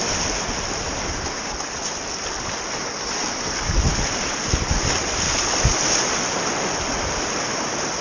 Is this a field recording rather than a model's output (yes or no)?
yes